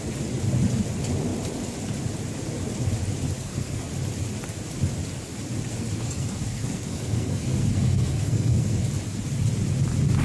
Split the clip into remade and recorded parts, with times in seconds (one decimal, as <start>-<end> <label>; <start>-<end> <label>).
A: 0.0-3.4 recorded; 3.4-3.9 remade; 3.9-5.7 recorded; 5.7-8.9 remade; 8.9-10.2 recorded